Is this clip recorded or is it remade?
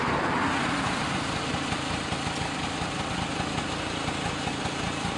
recorded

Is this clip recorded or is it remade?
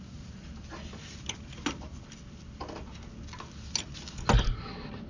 recorded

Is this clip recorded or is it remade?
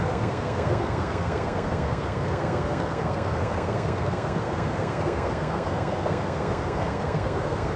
remade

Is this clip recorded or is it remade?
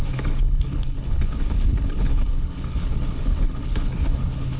remade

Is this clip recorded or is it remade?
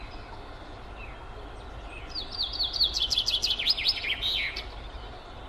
recorded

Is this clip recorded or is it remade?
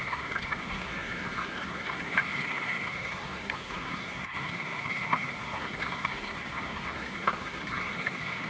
remade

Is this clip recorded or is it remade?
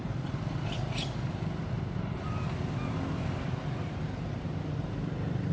recorded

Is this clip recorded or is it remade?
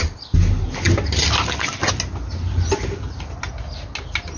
recorded